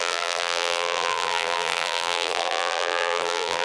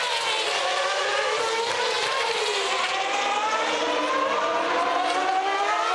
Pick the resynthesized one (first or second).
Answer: first